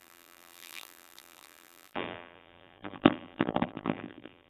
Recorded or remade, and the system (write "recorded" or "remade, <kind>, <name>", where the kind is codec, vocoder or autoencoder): remade, vocoder, BigVGAN v2